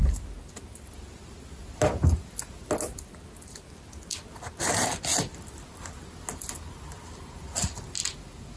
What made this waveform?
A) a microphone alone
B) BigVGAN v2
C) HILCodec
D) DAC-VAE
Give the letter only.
A